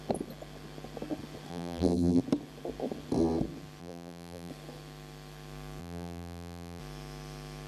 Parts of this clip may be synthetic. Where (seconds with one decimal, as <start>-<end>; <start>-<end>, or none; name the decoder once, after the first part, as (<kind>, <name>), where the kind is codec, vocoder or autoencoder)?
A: 1.5-2.2 (vocoder, BigVGAN v2); 3.8-4.5; 5.8-6.8